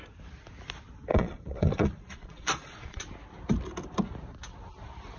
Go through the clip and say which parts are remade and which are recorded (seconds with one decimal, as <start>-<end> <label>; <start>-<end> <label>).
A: 0.0-1.1 recorded; 1.1-3.0 remade; 3.0-5.2 recorded